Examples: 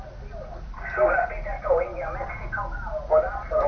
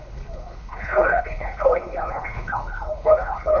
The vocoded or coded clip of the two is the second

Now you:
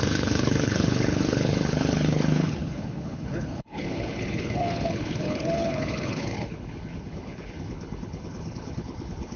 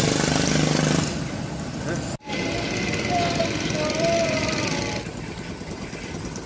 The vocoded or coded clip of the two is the first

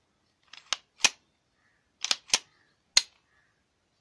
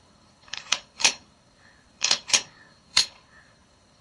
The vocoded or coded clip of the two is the second